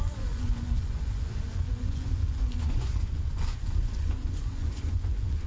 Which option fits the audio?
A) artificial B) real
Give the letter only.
A